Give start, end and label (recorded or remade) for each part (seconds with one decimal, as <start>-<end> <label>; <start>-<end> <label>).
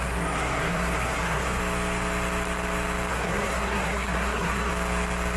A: 0.0-1.6 remade; 1.6-3.1 recorded; 3.1-4.7 remade; 4.7-5.4 recorded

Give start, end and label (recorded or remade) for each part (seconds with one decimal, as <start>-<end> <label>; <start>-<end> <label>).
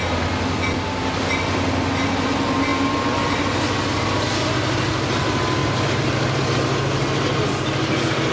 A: 0.0-5.6 recorded; 5.6-6.4 remade; 6.4-8.3 recorded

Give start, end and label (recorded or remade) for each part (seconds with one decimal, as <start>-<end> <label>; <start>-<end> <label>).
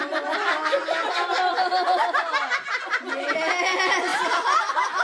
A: 0.0-1.0 recorded; 1.0-1.7 remade; 1.7-4.1 recorded; 4.1-4.6 remade; 4.6-5.0 recorded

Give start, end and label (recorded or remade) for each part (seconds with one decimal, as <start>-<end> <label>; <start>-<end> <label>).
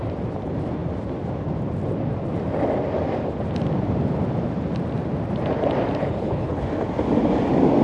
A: 0.0-6.0 recorded; 6.0-6.6 remade; 6.6-7.8 recorded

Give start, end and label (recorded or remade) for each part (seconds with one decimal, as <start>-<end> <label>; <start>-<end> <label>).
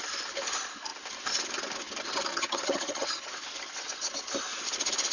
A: 0.0-2.3 recorded; 2.3-3.3 remade; 3.3-5.1 recorded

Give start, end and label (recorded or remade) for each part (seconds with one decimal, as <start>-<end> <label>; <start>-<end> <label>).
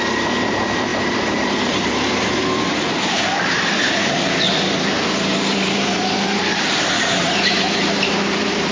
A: 0.0-8.7 remade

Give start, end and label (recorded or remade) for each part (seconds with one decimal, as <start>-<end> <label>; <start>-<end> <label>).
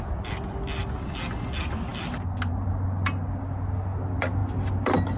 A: 0.0-5.2 recorded